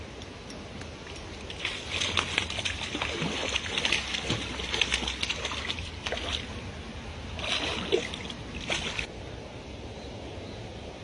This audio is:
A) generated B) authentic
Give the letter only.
B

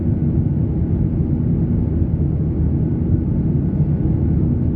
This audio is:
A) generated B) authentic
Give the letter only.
B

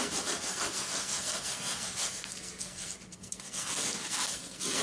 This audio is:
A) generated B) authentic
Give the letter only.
A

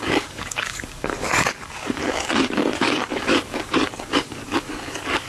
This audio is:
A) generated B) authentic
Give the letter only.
A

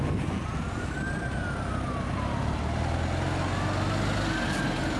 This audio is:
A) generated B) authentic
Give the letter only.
B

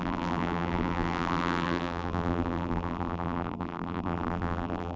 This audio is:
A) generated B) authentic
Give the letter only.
A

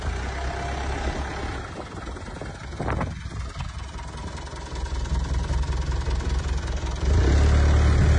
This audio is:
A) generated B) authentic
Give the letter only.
B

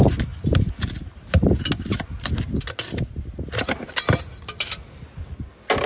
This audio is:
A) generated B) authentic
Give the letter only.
B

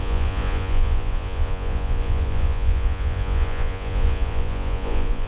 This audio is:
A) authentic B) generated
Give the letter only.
B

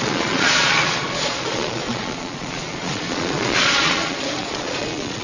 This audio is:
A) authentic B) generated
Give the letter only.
B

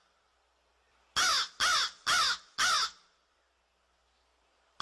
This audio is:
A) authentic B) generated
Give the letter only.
A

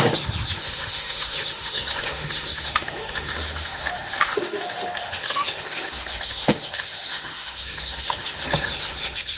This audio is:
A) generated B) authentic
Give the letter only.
A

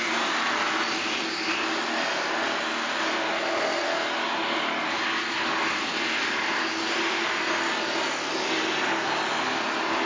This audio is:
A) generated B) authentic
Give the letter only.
B